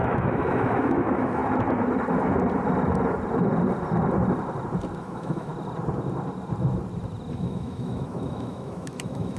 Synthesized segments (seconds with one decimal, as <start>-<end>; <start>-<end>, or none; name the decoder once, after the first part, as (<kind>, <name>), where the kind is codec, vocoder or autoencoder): 0.0-1.4 (autoencoder, DAC-VAE); 5.0-5.5; 7.3-9.4

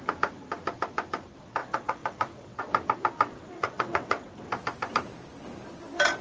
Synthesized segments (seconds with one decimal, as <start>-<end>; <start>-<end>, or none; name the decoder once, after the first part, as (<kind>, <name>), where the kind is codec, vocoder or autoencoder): 1.6-2.6 (vocoder, WaveNeXt); 3.3-4.5